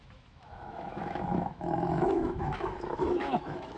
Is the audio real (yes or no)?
no